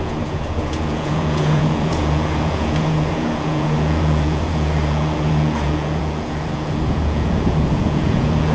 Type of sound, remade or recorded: remade